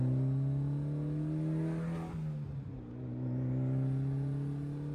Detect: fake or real real